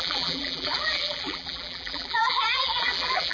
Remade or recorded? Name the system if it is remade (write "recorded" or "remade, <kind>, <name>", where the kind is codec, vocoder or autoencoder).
remade, vocoder, BigVGAN v2